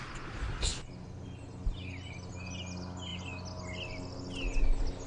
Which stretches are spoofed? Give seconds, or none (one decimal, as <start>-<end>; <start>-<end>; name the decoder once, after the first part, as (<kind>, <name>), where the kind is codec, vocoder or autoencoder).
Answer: 0.7-2.3 (vocoder, BigVGAN v2)